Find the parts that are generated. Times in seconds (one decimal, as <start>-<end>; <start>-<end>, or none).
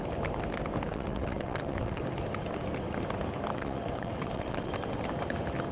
0.9-2.0; 3.5-4.7